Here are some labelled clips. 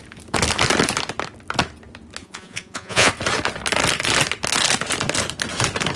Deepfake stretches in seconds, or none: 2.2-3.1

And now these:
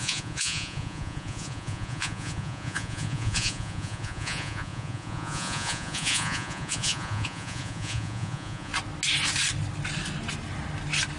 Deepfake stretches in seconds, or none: 0.0-8.7

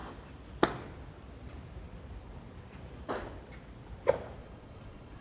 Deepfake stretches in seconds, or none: 4.4-5.2

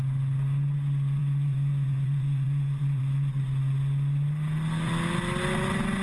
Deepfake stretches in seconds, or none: 1.2-3.0

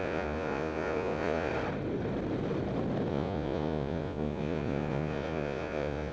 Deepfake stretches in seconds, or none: 0.0-1.5; 3.1-6.1

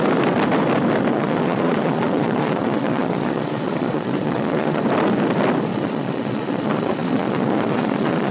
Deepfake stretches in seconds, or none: 1.1-4.8; 5.7-8.3